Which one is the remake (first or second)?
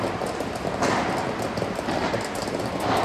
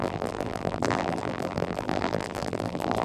second